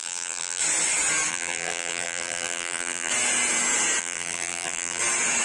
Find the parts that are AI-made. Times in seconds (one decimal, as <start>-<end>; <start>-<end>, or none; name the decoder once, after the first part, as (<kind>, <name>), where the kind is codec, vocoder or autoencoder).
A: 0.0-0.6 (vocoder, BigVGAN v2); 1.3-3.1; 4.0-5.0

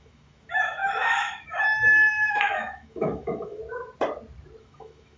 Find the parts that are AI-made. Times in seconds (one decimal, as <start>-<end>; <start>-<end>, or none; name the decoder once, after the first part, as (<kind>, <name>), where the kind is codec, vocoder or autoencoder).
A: 0.0-3.6 (autoencoder, DAC-VAE); 4.6-5.2

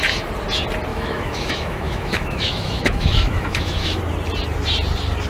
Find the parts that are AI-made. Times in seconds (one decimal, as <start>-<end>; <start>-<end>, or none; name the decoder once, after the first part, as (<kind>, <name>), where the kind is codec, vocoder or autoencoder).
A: 0.9-4.0 (autoencoder, DAC-VAE)

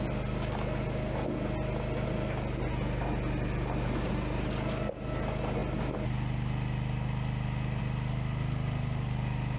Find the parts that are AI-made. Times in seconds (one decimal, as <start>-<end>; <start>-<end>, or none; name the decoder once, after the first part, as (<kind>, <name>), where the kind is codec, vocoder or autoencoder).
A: none

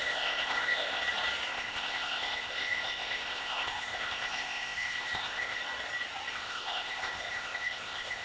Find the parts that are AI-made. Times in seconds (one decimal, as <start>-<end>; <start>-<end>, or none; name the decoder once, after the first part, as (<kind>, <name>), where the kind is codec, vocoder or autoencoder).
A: 0.0-1.0 (codec, ZipCodec); 1.5-5.6; 6.3-8.2

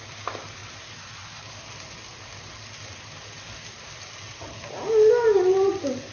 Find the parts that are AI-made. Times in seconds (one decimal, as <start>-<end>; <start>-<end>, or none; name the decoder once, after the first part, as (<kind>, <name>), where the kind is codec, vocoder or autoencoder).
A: none

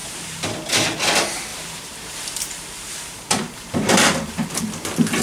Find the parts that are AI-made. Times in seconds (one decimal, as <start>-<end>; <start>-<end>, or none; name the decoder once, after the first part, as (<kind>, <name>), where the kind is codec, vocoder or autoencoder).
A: 0.0-0.5 (vocoder, BigVGAN v2); 1.5-4.6